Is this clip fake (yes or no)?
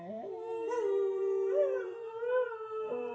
yes